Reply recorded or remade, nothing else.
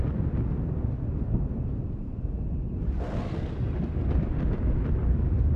recorded